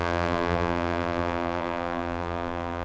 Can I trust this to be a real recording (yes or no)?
no